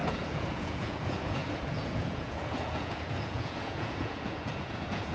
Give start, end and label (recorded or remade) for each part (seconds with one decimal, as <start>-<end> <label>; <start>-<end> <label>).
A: 0.0-5.1 remade

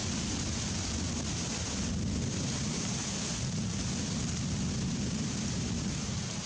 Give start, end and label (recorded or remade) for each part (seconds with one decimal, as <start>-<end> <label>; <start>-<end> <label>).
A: 0.0-2.3 recorded; 2.3-6.5 remade

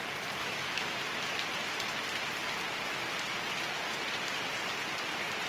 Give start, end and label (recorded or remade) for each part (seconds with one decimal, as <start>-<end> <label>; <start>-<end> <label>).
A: 0.0-0.4 recorded; 0.4-1.0 remade; 1.0-5.5 recorded

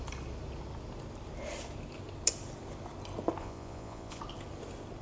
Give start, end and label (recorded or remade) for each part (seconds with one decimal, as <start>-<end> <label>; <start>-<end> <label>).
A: 0.0-3.4 recorded; 3.4-4.2 remade; 4.2-5.0 recorded